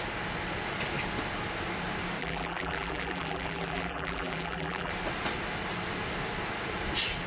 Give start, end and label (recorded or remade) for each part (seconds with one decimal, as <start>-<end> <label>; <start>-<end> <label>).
0.0-2.2 recorded; 2.2-4.9 remade; 4.9-7.3 recorded